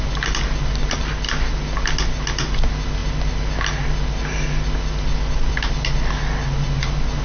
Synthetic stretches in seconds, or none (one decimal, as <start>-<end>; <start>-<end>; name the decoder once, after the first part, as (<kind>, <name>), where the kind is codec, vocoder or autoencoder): none